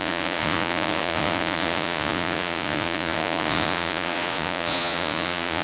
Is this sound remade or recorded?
remade